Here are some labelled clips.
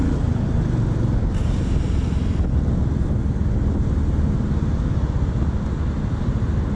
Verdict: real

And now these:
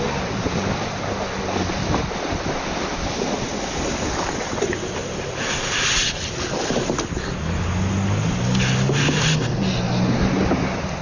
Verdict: real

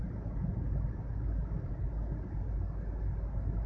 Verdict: real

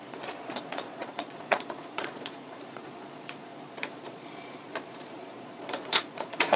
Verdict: fake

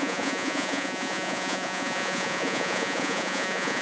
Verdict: fake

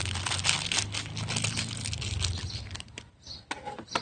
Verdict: real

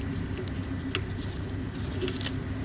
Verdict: real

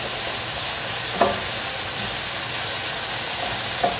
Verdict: real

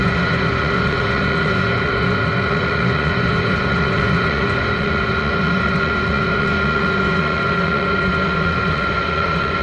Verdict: fake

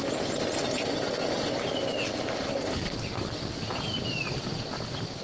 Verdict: real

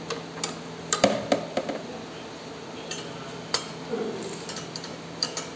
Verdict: real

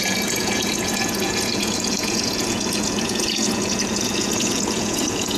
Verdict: fake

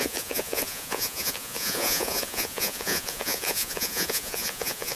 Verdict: fake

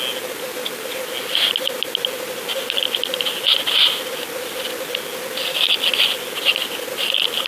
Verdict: real